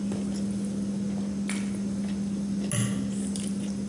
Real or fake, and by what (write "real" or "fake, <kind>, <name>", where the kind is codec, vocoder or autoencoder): real